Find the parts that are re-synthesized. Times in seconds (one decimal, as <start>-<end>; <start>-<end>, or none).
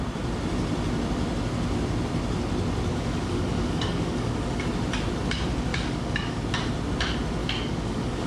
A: 2.9-4.6; 5.7-6.4; 7.4-8.3